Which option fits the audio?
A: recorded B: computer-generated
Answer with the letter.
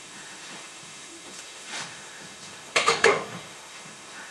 B